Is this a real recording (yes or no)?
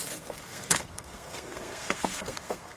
no